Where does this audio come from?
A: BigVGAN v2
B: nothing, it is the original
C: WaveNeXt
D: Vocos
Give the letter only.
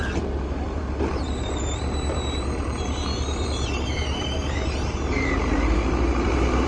A